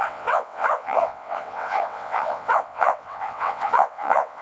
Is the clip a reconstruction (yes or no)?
yes